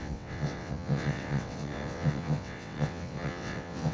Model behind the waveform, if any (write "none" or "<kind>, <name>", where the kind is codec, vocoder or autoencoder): vocoder, WaveNeXt